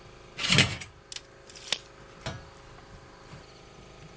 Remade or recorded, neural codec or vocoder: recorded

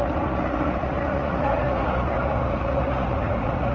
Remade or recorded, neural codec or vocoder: remade, vocoder, Vocos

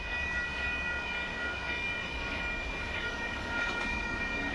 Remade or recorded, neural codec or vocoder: remade, codec, DAC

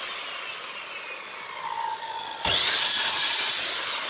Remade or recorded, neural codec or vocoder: recorded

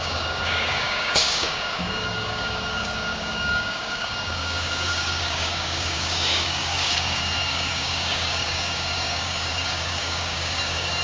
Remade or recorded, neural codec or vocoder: remade, codec, DAC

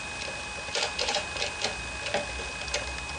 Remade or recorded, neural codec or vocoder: recorded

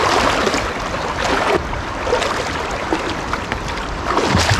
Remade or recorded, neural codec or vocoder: recorded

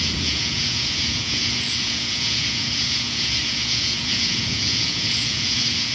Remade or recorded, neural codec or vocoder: remade, vocoder, Vocos